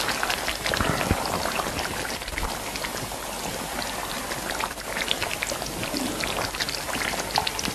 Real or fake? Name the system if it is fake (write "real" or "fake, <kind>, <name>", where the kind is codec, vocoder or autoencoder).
real